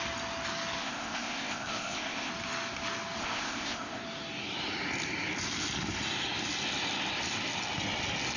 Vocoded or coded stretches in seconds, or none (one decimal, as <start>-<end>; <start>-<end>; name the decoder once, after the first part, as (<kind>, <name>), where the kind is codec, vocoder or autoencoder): 0.8-2.3 (codec, ZipCodec); 3.2-4.0